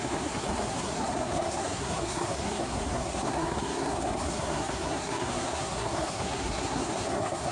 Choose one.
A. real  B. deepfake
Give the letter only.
B